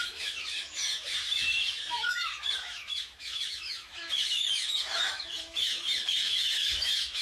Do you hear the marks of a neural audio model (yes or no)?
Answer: yes